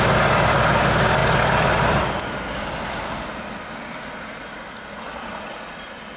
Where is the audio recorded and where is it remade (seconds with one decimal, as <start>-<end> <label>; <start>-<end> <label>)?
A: 0.0-6.2 recorded